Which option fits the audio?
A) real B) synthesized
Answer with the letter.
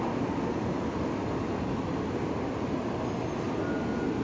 A